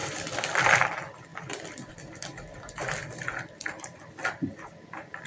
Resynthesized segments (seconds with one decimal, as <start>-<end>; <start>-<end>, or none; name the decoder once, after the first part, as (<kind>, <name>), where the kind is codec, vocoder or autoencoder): 0.0-1.3 (vocoder, BigVGAN v2); 1.9-3.0; 3.8-5.3